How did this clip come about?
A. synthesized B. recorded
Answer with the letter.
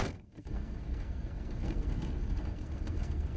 A